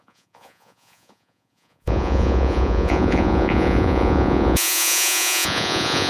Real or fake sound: fake